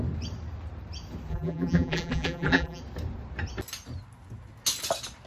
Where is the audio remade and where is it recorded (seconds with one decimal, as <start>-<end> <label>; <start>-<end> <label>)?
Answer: 0.0-1.3 recorded; 1.3-2.8 remade; 2.8-5.3 recorded